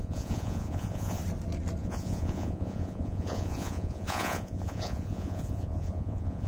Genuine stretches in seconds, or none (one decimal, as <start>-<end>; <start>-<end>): 1.2-1.8